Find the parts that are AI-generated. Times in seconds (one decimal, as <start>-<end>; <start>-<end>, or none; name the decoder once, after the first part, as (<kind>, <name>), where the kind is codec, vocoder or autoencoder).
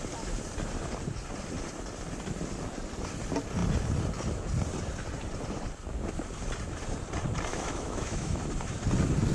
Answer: 7.5-8.4 (autoencoder, DAC-VAE)